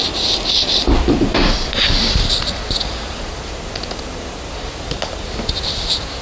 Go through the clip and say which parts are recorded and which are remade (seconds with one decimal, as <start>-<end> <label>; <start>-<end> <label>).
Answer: 0.0-6.2 recorded